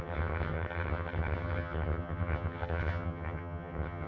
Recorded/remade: remade